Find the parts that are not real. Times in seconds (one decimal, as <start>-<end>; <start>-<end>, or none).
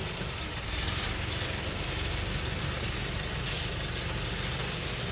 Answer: none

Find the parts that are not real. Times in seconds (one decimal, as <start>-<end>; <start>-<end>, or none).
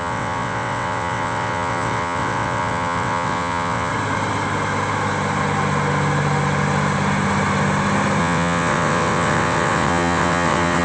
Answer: 0.0-3.9; 8.2-10.8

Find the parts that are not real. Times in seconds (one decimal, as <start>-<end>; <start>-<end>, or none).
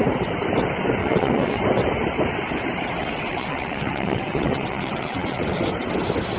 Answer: 1.0-1.6; 3.0-5.7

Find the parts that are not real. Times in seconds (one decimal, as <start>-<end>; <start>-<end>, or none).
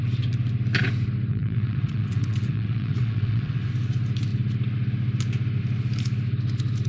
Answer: 1.3-3.7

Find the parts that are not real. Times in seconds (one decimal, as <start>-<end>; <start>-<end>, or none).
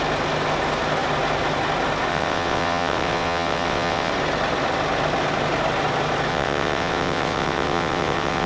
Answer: 2.1-4.1; 6.3-8.5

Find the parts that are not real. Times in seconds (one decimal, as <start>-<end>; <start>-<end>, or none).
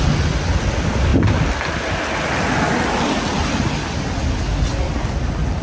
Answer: none